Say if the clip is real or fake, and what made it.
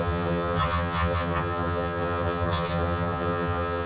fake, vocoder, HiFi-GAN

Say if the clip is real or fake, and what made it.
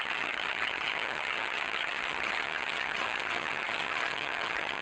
fake, vocoder, HiFi-GAN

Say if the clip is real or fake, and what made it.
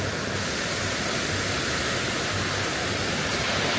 real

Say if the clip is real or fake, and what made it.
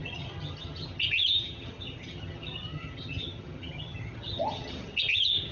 fake, vocoder, HiFi-GAN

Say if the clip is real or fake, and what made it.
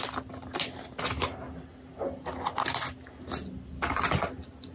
real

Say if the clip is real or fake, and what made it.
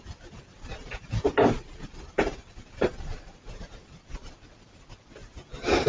real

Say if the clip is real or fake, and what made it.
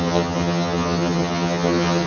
fake, vocoder, HiFi-GAN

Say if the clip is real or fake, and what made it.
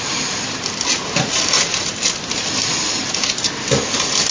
real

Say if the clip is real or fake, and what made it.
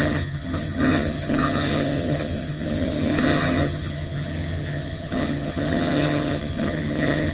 fake, vocoder, HiFi-GAN